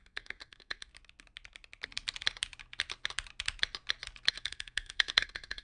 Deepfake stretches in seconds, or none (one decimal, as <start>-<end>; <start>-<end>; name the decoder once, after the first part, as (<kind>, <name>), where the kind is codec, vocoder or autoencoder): 0.0-0.9 (codec, SNAC); 4.3-5.6